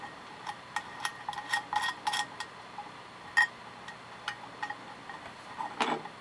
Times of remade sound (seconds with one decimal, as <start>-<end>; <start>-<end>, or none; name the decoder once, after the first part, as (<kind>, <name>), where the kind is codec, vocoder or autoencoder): none